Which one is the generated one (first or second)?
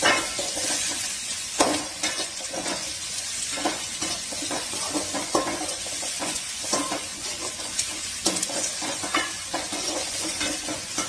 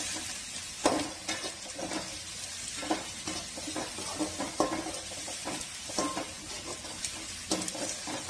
first